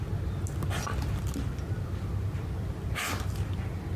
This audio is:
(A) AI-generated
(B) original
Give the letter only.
B